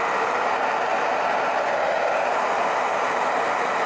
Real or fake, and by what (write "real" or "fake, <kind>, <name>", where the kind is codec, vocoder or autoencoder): real